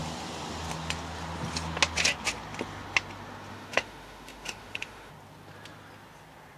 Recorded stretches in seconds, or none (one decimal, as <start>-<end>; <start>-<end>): 0.0-3.5; 5.1-6.6

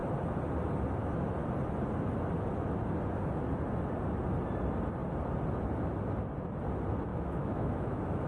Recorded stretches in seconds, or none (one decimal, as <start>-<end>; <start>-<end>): 0.0-7.1

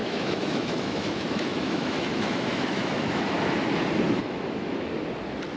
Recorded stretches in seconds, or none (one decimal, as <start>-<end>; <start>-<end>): 3.4-4.2; 4.9-5.6

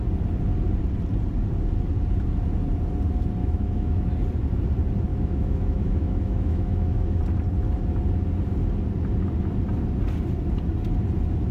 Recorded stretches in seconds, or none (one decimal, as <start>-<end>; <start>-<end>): 0.0-3.4; 4.1-5.1; 7.2-11.5

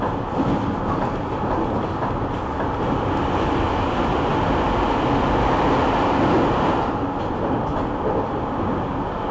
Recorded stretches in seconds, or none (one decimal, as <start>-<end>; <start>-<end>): 0.0-9.3

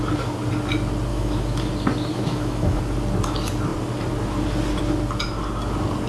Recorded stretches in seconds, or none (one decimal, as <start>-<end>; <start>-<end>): 0.0-1.1; 1.7-2.1; 2.8-6.1

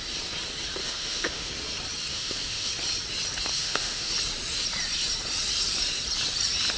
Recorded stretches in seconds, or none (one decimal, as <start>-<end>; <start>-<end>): 0.0-0.8; 1.5-2.1; 2.7-3.5; 4.1-6.8

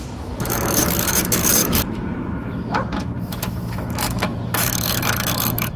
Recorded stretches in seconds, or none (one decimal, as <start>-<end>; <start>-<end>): none